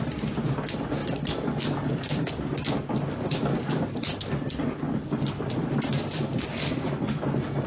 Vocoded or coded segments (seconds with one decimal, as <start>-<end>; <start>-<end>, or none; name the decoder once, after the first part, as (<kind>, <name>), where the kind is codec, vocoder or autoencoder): none